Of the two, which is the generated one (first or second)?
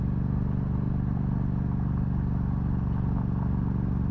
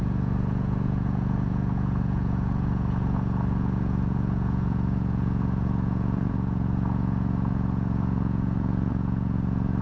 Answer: second